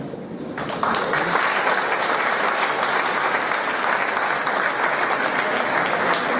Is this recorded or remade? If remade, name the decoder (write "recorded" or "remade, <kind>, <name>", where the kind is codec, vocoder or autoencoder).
recorded